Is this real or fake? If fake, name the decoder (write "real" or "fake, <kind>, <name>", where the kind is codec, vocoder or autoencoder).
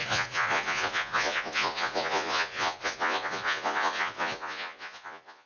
fake, vocoder, Vocos